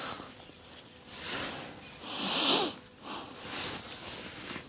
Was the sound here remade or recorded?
recorded